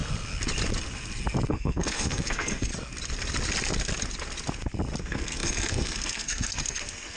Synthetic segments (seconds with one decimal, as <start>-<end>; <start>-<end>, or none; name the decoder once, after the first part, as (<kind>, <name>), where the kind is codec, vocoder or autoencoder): 1.5-2.7 (codec, SNAC); 5.0-7.2